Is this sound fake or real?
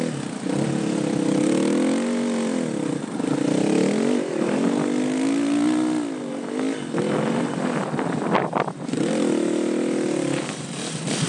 real